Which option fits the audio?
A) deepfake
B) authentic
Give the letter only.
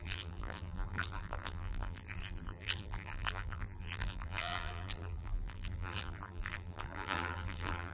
A